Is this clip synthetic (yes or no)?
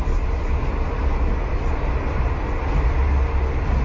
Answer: no